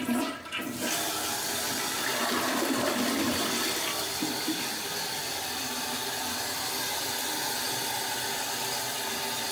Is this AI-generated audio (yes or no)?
no